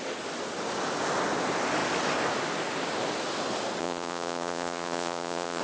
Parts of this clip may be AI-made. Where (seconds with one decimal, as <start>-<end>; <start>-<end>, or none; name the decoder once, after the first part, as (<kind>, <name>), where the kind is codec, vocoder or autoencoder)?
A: 3.8-5.6 (vocoder, Vocos)